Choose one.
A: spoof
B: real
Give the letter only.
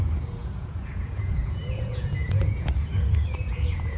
A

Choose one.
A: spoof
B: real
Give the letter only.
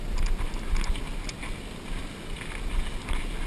B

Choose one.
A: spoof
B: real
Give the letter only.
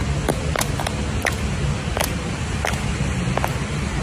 B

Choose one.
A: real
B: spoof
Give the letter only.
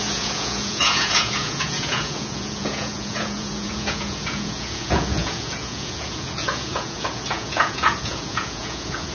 B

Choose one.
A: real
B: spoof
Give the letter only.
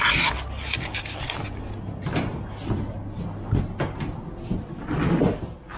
A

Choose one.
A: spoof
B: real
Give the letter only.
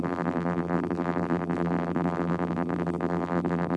A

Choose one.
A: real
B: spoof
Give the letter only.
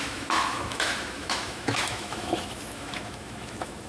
B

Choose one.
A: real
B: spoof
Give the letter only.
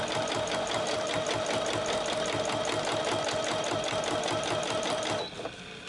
A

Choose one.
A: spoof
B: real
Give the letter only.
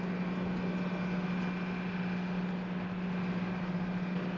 B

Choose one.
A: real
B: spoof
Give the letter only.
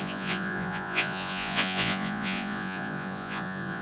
B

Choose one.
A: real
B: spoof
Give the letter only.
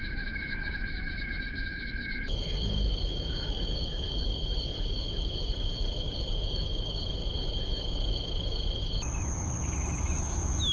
B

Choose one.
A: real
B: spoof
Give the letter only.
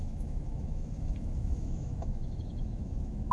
B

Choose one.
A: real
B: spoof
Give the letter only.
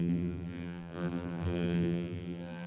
B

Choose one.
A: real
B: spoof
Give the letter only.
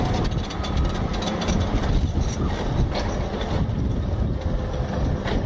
A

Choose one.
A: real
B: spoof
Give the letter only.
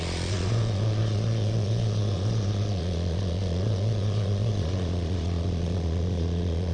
B